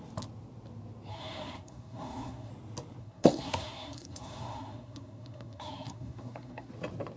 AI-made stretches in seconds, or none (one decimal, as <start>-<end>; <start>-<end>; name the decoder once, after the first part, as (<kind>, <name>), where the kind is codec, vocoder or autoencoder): 1.1-2.5 (codec, SNAC); 3.0-6.7